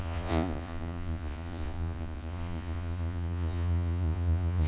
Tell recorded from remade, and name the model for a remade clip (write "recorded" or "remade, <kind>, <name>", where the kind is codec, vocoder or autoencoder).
remade, vocoder, Vocos